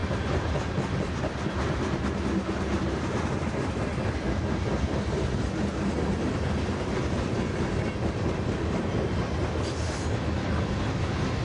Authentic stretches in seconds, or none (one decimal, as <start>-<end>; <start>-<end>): 0.0-11.4